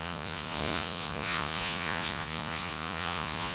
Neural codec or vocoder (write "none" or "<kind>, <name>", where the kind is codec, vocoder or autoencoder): vocoder, Vocos